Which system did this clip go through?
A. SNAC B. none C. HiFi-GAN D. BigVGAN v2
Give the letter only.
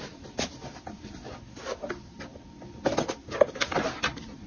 B